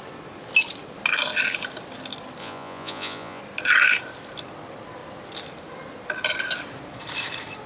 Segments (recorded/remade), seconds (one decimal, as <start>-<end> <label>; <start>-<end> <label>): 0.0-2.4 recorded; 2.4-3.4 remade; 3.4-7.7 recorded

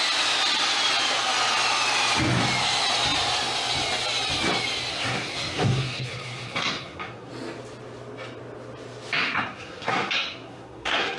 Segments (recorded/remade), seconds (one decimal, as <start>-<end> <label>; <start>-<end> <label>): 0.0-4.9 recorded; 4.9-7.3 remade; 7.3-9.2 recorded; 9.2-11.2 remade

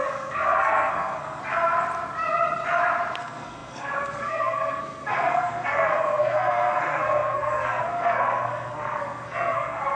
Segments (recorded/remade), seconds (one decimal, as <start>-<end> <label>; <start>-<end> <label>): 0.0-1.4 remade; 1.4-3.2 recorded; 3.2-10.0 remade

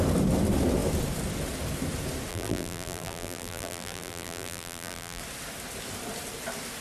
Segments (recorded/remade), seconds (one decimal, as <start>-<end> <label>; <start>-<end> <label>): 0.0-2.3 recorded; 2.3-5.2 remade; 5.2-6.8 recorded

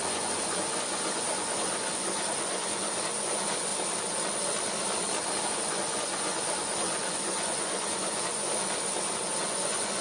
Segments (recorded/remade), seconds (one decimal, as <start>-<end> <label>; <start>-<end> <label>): 0.0-3.7 remade; 3.7-5.4 recorded; 5.4-8.5 remade; 8.5-9.4 recorded; 9.4-10.0 remade

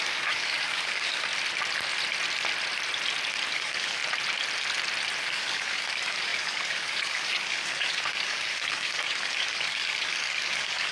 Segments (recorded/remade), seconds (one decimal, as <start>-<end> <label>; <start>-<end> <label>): 0.0-1.3 remade; 1.3-3.5 recorded; 3.5-4.0 remade; 4.0-5.2 recorded; 5.2-10.9 remade